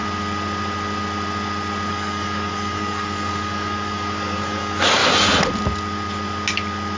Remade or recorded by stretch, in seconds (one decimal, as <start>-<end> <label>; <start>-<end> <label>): 0.0-1.9 recorded; 1.9-5.0 remade; 5.0-7.0 recorded